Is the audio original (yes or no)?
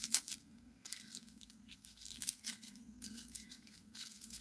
no